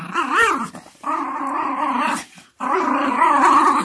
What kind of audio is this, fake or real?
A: fake